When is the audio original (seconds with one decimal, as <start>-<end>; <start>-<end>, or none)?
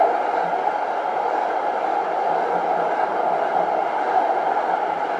0.0-5.2